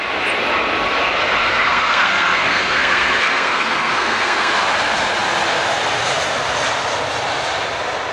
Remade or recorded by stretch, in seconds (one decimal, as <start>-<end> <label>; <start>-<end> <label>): 0.0-1.4 recorded; 1.4-4.5 remade; 4.5-8.1 recorded